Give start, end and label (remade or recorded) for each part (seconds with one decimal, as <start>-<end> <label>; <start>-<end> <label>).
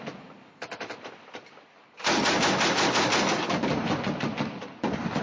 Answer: 0.0-5.2 recorded